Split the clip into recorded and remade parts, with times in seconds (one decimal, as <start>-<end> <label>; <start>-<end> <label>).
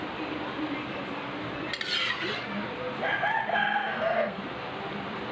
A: 0.0-3.5 recorded; 3.5-4.4 remade; 4.4-5.3 recorded